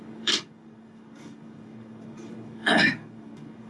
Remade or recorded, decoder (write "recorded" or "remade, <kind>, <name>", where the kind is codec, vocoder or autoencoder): remade, codec, DAC